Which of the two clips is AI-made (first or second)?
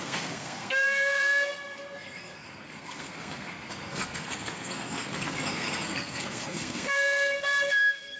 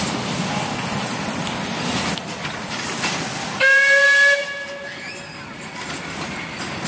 first